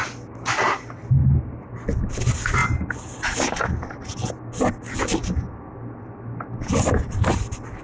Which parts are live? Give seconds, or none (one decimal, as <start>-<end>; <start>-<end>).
0.0-7.8